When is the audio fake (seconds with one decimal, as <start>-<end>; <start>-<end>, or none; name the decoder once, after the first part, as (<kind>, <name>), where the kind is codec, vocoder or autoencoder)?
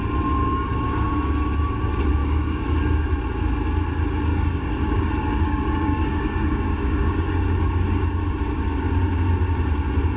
0.4-1.5 (codec, DAC); 2.2-3.1; 4.3-8.6